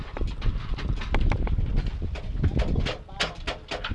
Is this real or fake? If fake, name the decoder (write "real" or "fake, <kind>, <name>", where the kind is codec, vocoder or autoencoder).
real